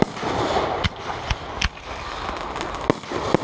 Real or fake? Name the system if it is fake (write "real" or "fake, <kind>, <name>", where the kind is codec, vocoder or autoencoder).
real